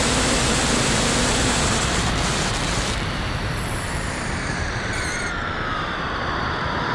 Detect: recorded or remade remade